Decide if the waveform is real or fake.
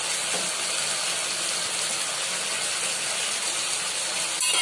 real